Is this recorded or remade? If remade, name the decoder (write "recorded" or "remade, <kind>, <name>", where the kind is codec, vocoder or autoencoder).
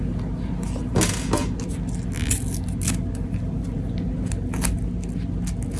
recorded